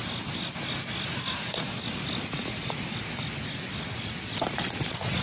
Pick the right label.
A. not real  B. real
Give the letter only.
B